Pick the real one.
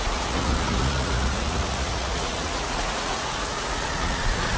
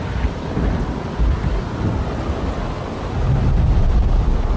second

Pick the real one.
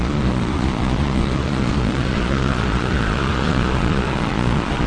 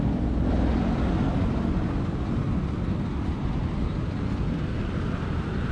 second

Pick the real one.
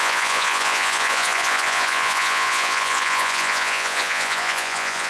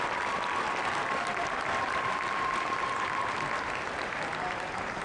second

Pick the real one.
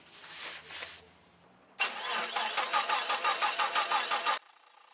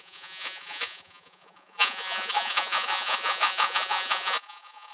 first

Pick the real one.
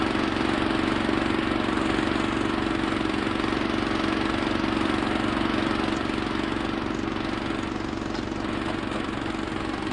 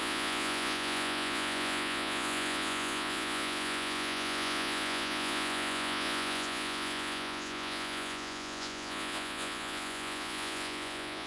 first